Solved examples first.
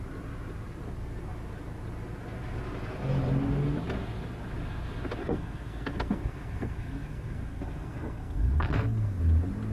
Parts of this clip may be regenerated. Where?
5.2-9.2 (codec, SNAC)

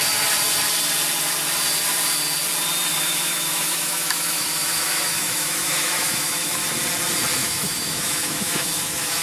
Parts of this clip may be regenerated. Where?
2.9-6.6 (autoencoder, DAC-VAE); 7.4-9.2

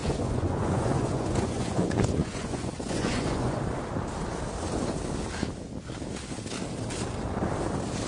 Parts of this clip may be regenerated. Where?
0.0-3.6 (vocoder, Vocos)

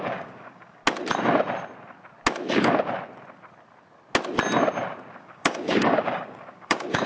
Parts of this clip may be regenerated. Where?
0.0-0.8 (codec, DAC); 5.1-7.1